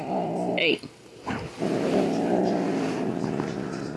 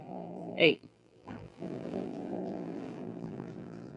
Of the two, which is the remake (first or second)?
second